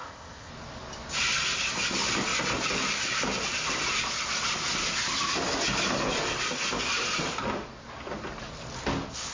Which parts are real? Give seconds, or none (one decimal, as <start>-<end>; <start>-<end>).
0.5-9.3